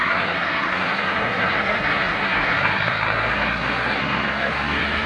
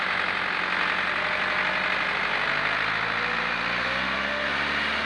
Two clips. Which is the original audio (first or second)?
second